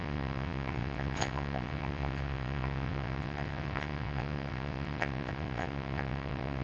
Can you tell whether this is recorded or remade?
remade